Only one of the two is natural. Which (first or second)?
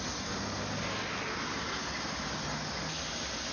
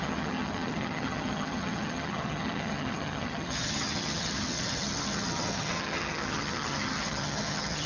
first